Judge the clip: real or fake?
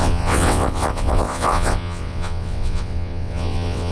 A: fake